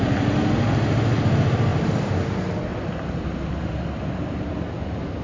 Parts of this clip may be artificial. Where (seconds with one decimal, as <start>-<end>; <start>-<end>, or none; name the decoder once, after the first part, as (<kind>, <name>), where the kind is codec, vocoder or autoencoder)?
1.7-2.3 (vocoder, BigVGAN v2); 2.7-4.5